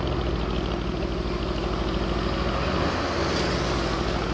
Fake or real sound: real